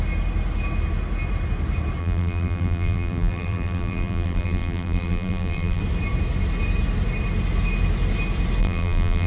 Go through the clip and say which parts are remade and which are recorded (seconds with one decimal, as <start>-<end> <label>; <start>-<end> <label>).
0.0-2.0 recorded; 2.0-5.8 remade; 5.8-8.6 recorded; 8.6-9.3 remade